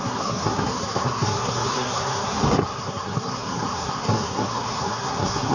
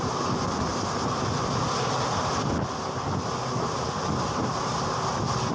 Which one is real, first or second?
second